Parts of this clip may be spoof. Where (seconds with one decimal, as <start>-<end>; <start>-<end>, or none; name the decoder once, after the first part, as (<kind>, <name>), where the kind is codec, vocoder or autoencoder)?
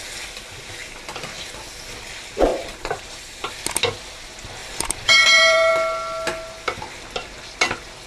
2.5-3.5 (vocoder, BigVGAN v2); 4.6-5.7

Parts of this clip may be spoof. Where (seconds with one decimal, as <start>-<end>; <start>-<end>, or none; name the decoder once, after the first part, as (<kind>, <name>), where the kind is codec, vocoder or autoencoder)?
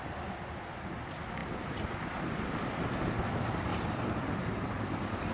3.7-5.3 (vocoder, BigVGAN v2)